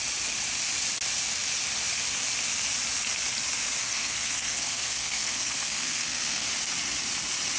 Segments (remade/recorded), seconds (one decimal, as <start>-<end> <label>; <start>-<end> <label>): 0.0-3.8 recorded; 3.8-6.5 remade; 6.5-7.6 recorded